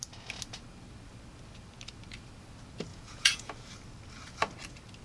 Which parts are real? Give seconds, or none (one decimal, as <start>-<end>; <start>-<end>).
0.0-2.9; 3.5-5.0